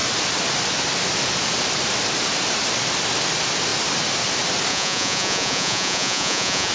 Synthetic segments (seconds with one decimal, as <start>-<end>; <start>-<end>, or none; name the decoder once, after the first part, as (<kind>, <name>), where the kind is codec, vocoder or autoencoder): 4.7-6.7 (vocoder, Vocos)